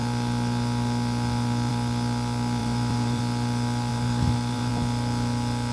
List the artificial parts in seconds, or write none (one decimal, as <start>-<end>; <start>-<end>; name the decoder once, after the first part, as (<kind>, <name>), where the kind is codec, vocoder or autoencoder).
2.6-3.2 (vocoder, BigVGAN v2); 3.9-4.7